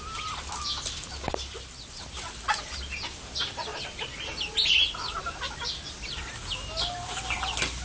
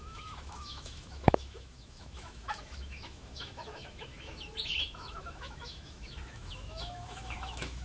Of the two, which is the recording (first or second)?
first